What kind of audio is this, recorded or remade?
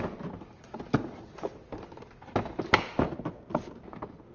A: recorded